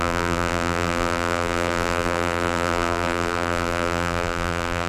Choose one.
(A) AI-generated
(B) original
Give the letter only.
A